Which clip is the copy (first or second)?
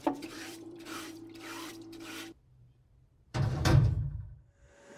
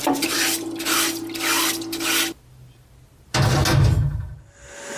first